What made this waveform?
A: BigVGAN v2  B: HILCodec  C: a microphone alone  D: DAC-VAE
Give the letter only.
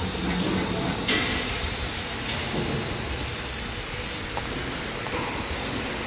C